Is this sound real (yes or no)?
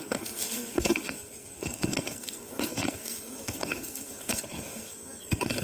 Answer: no